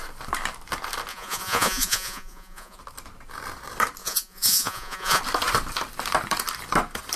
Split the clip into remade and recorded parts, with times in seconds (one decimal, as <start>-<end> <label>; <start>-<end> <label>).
0.0-1.1 recorded; 1.1-2.8 remade; 2.8-4.0 recorded; 4.0-5.2 remade; 5.2-7.2 recorded